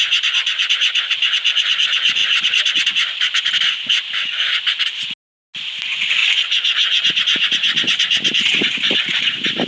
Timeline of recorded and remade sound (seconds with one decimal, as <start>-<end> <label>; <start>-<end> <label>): 0.0-2.2 recorded; 2.2-3.5 remade; 3.5-9.7 recorded